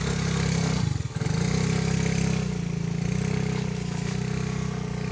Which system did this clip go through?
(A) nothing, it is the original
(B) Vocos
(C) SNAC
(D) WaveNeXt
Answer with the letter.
A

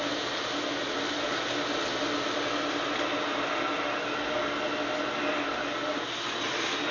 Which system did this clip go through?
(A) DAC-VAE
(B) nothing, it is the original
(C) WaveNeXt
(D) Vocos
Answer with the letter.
B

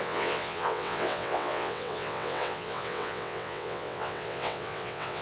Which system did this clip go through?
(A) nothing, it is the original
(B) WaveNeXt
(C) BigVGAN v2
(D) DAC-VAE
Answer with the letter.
B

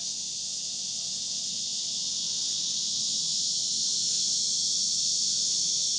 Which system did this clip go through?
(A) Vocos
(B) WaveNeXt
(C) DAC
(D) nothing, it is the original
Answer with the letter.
B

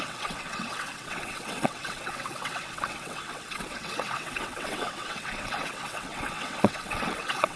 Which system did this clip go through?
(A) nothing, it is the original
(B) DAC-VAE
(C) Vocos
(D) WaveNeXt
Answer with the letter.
D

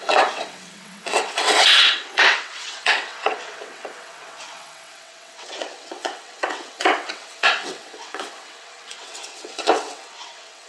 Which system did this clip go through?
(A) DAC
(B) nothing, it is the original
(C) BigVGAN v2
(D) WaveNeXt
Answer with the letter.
D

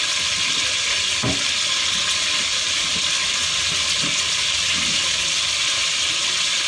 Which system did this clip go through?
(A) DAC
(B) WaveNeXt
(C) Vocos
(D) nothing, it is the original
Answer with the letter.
D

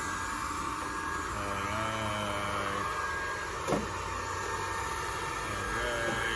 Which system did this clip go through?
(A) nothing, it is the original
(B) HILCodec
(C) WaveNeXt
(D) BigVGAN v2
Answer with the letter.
A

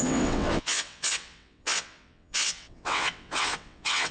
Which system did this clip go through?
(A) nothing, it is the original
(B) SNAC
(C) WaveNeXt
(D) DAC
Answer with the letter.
C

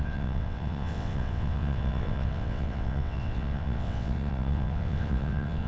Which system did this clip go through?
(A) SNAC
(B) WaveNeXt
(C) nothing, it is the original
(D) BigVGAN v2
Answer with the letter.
B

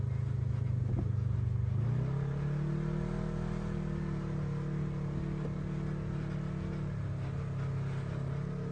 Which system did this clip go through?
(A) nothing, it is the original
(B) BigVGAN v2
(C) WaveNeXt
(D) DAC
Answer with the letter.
A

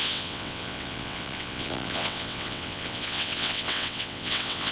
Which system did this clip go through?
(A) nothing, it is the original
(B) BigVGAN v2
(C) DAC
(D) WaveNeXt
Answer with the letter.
D